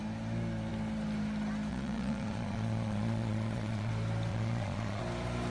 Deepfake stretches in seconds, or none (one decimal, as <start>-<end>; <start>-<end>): 1.7-3.9; 4.3-5.0